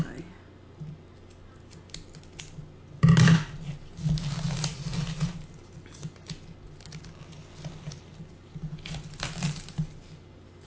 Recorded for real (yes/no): yes